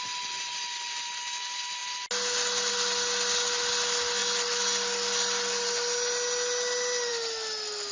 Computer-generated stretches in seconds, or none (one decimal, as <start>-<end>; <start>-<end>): none